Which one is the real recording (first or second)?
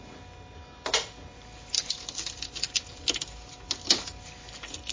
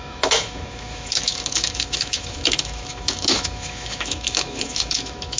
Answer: first